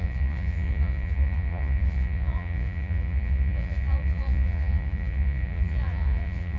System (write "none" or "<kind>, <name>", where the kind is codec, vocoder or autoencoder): vocoder, Vocos